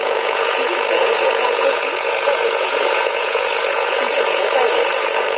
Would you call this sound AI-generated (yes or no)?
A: yes